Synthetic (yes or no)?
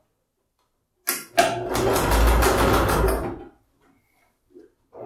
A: no